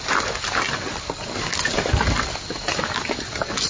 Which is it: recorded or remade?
recorded